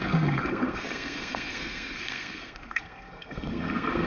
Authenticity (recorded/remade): remade